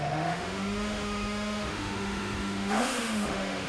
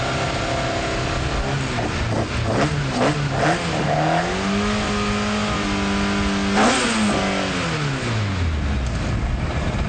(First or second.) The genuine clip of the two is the second